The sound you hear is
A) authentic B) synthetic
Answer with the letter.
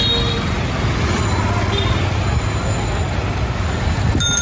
A